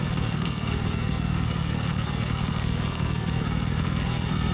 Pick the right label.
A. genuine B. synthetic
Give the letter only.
B